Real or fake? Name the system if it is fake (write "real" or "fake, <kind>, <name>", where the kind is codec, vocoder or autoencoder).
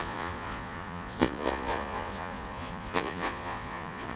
fake, vocoder, Vocos